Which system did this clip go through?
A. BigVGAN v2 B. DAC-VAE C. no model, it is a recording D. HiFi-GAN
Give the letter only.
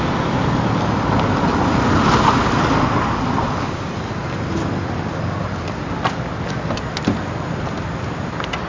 C